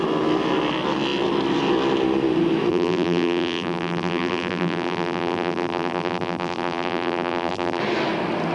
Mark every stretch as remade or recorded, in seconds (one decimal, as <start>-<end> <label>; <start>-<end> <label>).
0.0-2.7 recorded; 2.7-7.8 remade; 7.8-8.5 recorded